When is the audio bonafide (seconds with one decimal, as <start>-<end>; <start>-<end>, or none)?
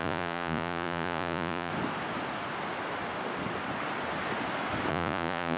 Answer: 1.7-4.9